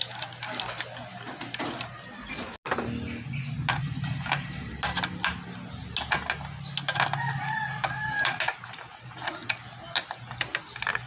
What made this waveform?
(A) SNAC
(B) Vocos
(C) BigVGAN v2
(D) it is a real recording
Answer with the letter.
D